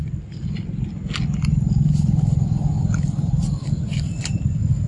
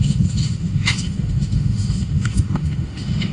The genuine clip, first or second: first